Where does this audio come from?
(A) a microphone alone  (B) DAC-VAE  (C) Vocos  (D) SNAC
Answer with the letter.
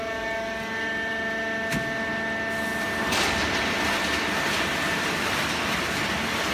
A